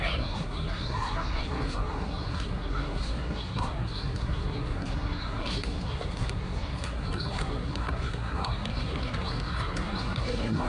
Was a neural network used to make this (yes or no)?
yes